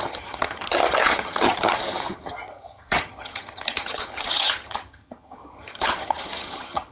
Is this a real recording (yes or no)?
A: no